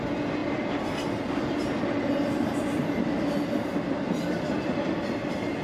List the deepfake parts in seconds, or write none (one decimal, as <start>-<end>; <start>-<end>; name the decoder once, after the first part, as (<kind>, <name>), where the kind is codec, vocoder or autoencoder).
none

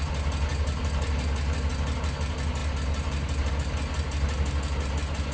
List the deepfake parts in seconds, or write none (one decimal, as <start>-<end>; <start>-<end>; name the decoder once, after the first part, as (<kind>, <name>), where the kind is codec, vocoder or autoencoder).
none

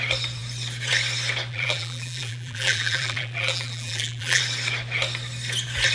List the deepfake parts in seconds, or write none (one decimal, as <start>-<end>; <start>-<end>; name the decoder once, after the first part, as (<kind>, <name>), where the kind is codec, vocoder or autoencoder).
1.5-4.4 (vocoder, BigVGAN v2)

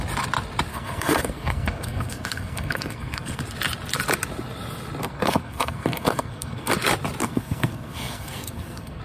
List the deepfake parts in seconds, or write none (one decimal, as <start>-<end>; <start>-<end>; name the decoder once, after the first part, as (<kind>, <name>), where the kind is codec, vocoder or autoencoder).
0.7-3.4 (codec, SNAC); 5.0-6.7; 7.2-9.0

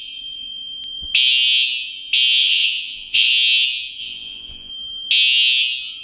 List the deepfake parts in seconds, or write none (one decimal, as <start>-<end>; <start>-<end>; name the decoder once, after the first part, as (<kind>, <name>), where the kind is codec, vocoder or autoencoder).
2.4-3.3 (vocoder, Vocos); 4.0-4.7

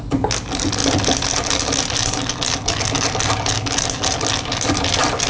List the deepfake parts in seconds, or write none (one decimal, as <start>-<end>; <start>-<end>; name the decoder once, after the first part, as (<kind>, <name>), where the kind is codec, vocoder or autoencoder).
none

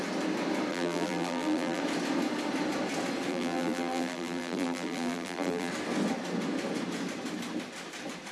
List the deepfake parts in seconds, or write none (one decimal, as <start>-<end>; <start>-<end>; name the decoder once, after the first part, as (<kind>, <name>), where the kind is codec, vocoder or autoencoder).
0.7-1.8 (vocoder, BigVGAN v2); 3.3-5.7

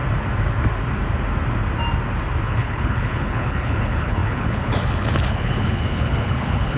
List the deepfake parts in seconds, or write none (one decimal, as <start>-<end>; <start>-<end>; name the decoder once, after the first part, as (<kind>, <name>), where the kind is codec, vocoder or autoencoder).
2.4-6.8 (codec, HILCodec)